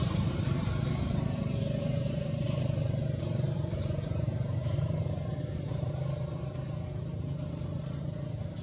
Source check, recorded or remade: remade